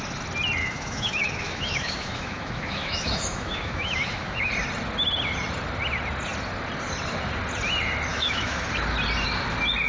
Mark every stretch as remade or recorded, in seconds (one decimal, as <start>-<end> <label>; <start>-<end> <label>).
0.0-0.6 recorded; 0.6-4.5 remade; 4.5-8.1 recorded; 8.1-8.6 remade; 8.6-9.9 recorded